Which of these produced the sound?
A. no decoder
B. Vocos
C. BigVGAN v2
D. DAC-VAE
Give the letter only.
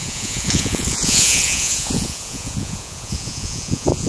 B